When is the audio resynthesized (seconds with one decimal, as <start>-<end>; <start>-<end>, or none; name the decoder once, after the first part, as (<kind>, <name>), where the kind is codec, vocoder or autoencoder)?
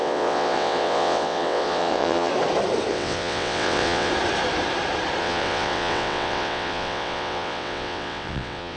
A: 0.0-2.3 (vocoder, WaveNeXt); 2.9-4.1; 5.2-8.8